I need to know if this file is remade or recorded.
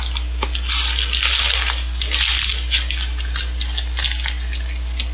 recorded